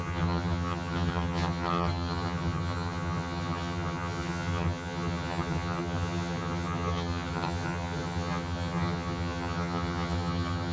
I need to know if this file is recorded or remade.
remade